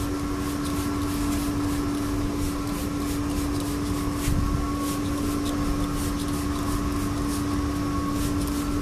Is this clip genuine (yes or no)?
yes